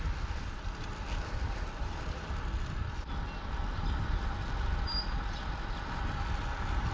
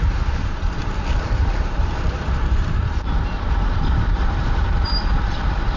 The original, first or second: first